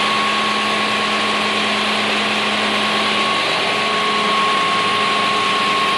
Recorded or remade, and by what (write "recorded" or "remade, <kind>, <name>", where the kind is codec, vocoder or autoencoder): recorded